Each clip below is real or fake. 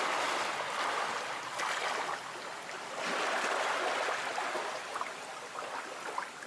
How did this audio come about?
real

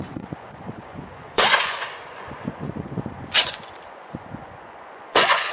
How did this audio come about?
fake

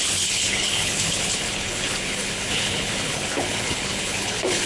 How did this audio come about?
fake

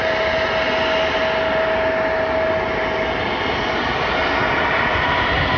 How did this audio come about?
real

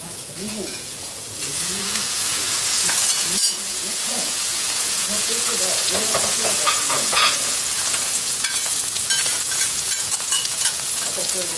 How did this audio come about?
fake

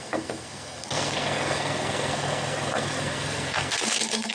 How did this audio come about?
fake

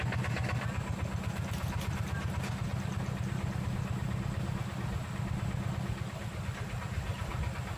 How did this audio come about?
fake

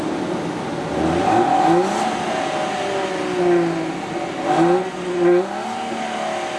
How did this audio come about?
real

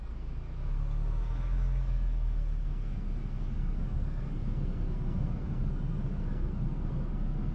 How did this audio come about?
fake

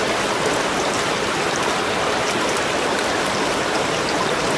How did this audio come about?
real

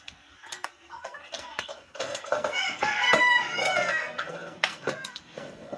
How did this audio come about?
fake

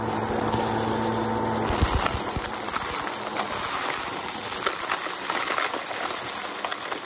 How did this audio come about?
real